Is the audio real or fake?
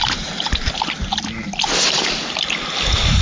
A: real